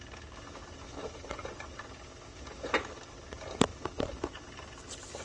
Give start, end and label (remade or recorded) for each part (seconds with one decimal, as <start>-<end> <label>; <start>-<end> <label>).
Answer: 0.0-5.2 recorded